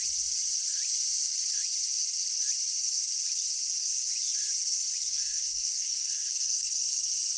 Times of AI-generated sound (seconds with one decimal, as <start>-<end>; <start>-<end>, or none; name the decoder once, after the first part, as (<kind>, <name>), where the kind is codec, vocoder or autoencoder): 5.1-6.8 (codec, SNAC)